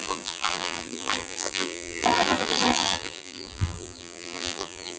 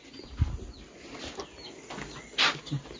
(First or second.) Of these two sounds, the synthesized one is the first